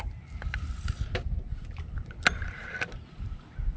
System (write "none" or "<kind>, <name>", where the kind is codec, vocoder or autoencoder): none